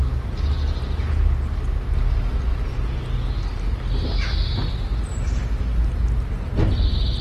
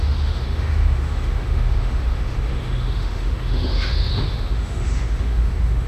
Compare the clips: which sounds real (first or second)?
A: first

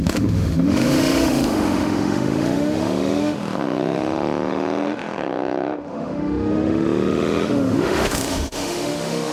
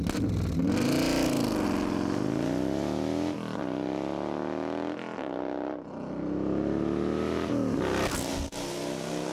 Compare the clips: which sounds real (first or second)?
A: second